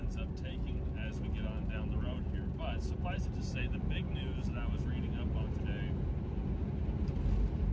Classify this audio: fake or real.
real